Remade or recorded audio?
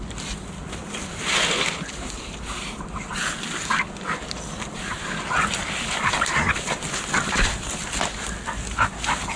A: recorded